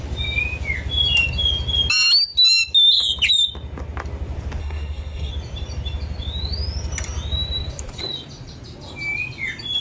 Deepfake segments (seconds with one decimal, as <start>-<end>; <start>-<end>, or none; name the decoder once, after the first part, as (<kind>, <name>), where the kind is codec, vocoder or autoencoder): 4.6-5.3 (codec, SNAC)